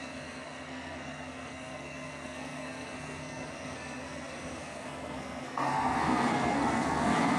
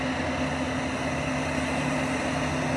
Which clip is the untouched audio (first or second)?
second